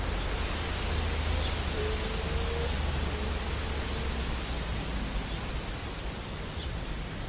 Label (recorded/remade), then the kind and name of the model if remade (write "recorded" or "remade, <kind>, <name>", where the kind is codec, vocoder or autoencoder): recorded